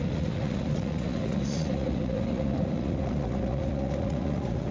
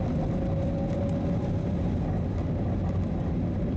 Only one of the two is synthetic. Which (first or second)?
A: first